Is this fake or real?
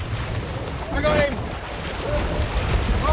real